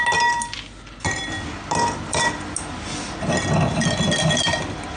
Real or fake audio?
real